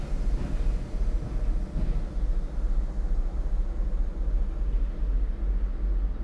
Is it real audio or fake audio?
real